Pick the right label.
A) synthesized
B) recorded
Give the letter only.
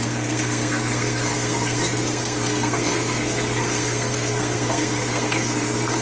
A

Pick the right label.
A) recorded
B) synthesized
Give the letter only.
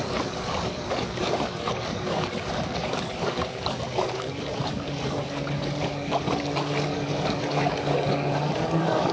B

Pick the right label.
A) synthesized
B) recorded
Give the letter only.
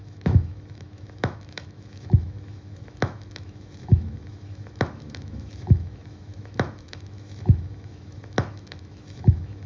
A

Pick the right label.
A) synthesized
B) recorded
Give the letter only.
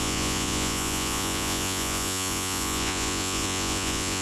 A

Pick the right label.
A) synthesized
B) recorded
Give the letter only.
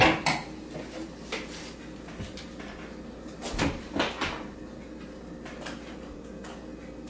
B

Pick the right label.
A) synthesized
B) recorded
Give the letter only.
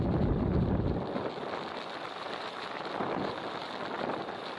A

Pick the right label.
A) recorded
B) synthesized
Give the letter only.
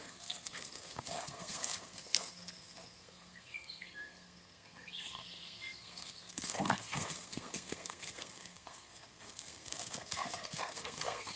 B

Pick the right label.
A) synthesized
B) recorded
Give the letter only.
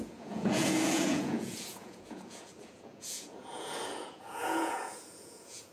A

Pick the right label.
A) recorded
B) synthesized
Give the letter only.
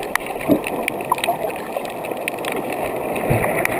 A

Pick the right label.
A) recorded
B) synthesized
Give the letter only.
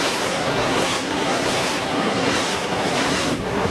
B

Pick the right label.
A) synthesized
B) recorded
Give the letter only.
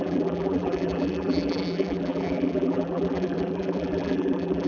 A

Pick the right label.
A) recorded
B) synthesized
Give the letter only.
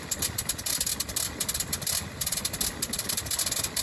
B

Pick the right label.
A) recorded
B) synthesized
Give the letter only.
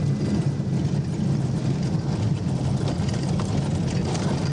A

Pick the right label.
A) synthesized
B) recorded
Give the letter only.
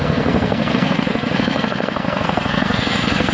A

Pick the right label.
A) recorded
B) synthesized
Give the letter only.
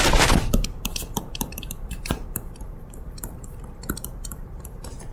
B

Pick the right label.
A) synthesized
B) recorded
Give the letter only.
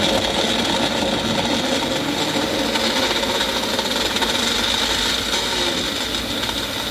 B